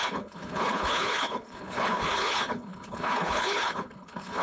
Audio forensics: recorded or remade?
remade